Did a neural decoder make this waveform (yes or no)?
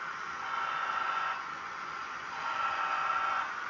yes